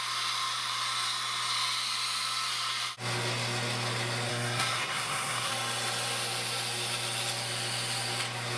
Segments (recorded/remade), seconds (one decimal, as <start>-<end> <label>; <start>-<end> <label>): 0.0-4.3 recorded; 4.3-5.5 remade; 5.5-8.6 recorded